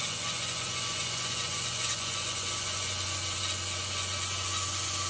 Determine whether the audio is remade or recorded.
remade